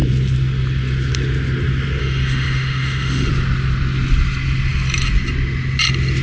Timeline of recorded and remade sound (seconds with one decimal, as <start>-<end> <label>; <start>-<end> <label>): 0.0-2.0 recorded; 2.0-3.3 remade; 3.3-6.2 recorded